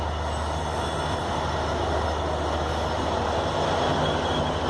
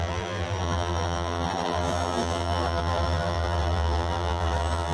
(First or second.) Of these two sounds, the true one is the first